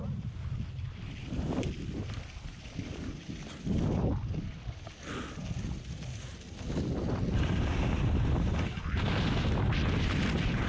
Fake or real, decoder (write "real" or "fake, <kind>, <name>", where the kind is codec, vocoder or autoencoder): real